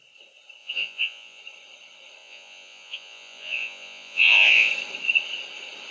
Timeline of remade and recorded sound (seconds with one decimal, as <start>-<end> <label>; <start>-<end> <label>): 0.0-0.6 recorded; 0.6-1.4 remade; 1.4-2.2 recorded; 2.2-4.7 remade; 4.7-5.9 recorded